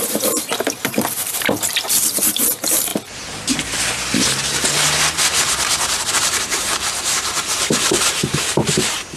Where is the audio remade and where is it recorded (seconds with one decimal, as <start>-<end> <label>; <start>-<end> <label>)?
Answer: 0.0-2.9 remade; 2.9-6.1 recorded; 6.1-9.2 remade